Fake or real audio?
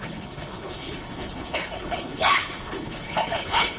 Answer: fake